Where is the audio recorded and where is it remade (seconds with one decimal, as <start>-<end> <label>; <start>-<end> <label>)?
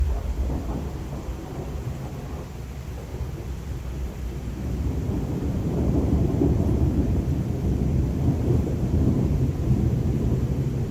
0.0-3.1 recorded; 3.1-7.2 remade; 7.2-8.4 recorded; 8.4-9.4 remade; 9.4-10.9 recorded